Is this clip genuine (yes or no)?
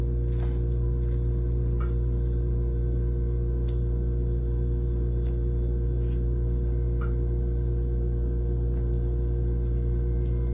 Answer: yes